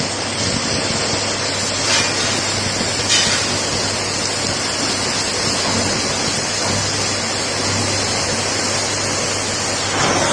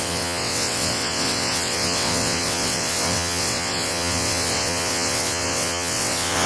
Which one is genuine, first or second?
first